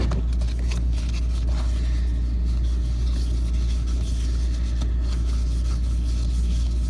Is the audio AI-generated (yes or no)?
no